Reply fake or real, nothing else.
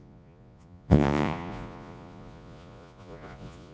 fake